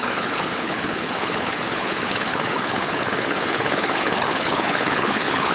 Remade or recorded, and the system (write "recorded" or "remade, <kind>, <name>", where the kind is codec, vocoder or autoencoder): remade, codec, HILCodec